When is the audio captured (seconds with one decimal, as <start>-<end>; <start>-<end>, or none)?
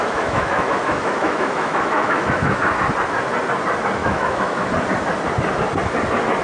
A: 2.6-4.0; 4.7-6.4